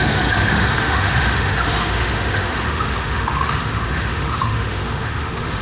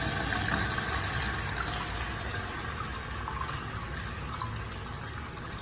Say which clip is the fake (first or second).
first